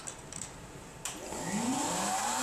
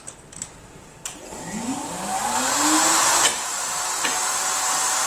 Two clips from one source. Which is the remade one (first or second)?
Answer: second